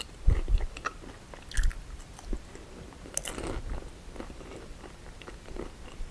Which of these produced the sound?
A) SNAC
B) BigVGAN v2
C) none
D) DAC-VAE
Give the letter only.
C